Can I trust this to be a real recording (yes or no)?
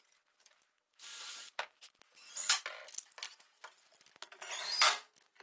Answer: yes